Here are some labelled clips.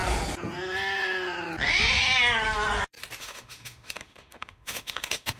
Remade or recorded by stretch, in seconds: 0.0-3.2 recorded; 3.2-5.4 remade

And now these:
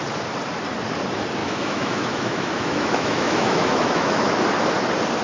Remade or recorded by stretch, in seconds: 0.0-1.4 recorded; 1.4-4.3 remade; 4.3-5.2 recorded